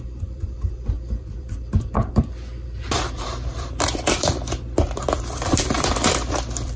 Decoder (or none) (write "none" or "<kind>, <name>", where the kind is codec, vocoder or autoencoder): vocoder, BigVGAN v2